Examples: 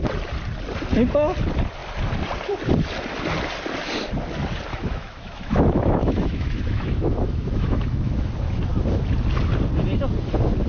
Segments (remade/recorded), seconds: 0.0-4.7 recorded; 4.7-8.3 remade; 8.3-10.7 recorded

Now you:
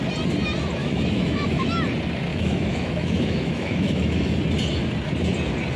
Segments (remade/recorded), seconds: 0.0-0.8 recorded; 0.8-1.7 remade; 1.7-2.3 recorded; 2.3-4.4 remade; 4.4-5.8 recorded

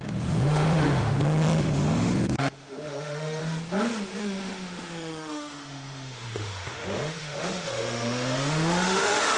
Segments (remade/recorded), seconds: 0.0-3.4 remade; 3.4-4.2 recorded; 4.2-9.4 remade

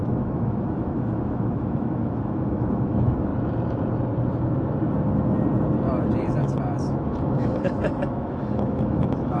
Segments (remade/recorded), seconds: 0.0-3.3 remade; 3.3-6.9 recorded; 6.9-9.4 remade

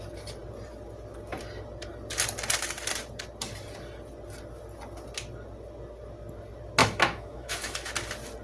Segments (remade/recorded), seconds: 0.0-6.8 recorded; 6.8-7.9 remade; 7.9-8.4 recorded

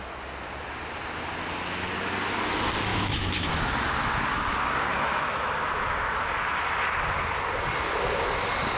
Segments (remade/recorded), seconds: 0.0-2.9 recorded; 2.9-3.5 remade; 3.5-4.9 recorded; 4.9-5.5 remade; 5.5-8.8 recorded

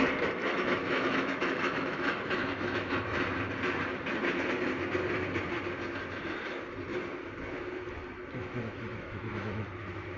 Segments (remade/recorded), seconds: 0.0-0.4 recorded; 0.4-3.2 remade; 3.2-8.4 recorded; 8.4-9.7 remade; 9.7-10.2 recorded

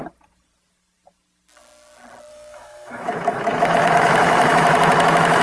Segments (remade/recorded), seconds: 0.0-2.3 recorded; 2.3-5.4 remade